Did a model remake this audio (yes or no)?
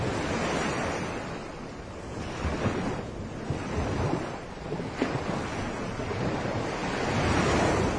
no